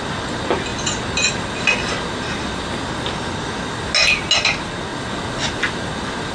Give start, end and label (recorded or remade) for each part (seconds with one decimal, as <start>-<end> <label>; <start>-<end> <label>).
0.0-6.3 recorded